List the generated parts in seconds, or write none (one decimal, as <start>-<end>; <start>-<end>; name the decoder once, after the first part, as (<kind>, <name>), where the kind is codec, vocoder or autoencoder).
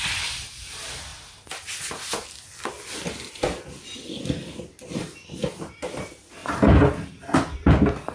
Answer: none